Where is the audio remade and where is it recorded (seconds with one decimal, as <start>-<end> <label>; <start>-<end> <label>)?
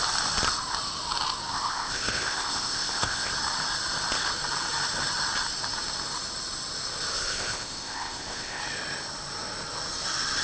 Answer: 0.0-1.5 recorded; 1.5-3.3 remade; 3.3-7.1 recorded; 7.1-8.6 remade; 8.6-10.4 recorded